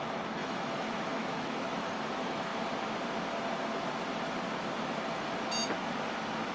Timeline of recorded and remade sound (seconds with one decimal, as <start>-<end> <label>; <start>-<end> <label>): 0.0-2.5 remade; 2.5-6.5 recorded